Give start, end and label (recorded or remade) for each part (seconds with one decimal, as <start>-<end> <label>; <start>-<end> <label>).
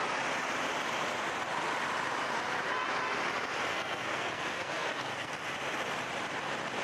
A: 0.0-3.7 recorded; 3.7-5.3 remade; 5.3-6.8 recorded